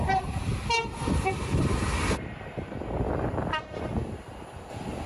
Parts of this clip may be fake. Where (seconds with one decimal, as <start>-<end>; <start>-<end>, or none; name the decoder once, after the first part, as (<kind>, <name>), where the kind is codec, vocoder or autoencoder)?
none